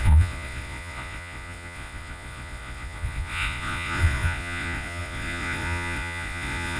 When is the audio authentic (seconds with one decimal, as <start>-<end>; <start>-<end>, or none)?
none